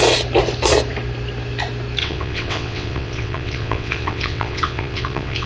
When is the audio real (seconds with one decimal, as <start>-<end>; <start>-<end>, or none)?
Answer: 0.0-2.0